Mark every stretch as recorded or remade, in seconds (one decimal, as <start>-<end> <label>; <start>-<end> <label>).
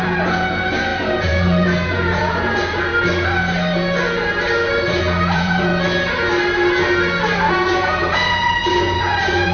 0.0-2.9 remade; 2.9-5.0 recorded; 5.0-5.7 remade; 5.7-7.5 recorded; 7.5-9.5 remade